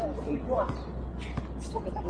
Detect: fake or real real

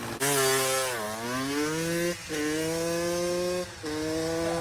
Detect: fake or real real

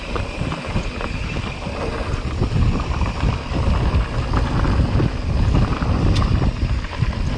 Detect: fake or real real